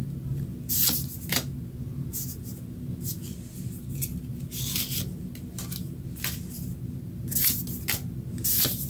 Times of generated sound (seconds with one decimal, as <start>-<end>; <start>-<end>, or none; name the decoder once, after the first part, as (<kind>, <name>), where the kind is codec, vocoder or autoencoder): none